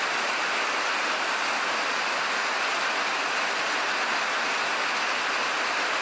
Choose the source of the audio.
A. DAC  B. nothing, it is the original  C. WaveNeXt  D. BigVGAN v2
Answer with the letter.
B